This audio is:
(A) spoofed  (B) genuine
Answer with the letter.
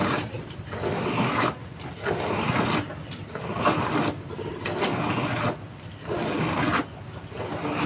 B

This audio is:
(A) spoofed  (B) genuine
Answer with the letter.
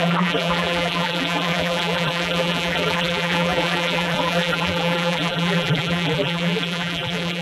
A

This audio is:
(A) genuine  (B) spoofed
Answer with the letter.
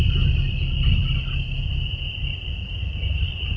A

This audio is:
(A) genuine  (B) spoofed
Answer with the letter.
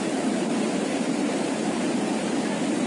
B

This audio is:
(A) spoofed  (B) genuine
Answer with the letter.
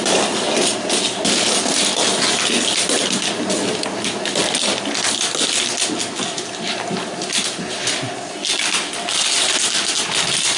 B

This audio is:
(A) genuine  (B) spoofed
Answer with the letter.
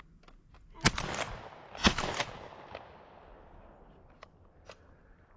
A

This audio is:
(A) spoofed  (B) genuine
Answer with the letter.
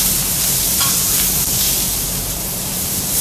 A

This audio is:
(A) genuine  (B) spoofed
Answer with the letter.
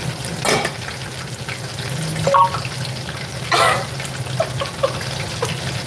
A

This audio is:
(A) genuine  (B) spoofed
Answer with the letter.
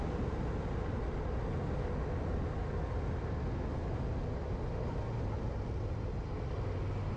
A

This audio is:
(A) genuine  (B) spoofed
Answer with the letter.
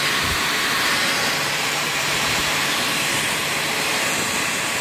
B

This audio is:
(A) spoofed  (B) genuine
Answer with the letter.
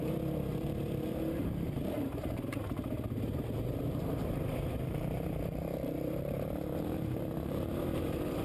A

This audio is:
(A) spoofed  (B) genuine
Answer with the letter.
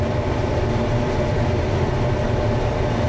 B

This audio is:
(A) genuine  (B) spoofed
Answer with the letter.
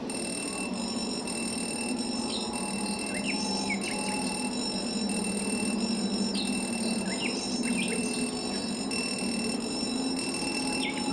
A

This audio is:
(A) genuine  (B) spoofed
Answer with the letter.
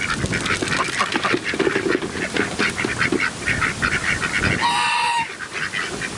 A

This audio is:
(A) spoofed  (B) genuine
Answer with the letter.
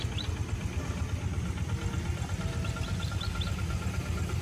B